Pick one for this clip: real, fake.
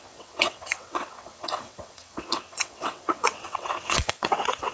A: fake